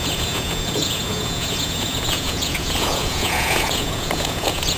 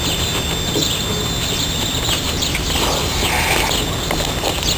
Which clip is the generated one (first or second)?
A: first